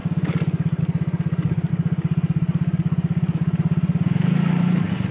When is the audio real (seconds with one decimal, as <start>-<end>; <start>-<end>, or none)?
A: 0.0-1.7